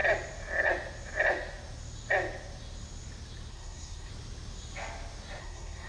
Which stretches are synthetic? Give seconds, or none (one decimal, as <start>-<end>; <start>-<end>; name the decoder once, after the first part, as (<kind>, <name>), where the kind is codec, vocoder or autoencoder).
3.5-4.1 (codec, SNAC); 5.4-5.9